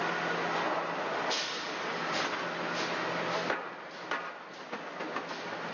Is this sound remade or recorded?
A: recorded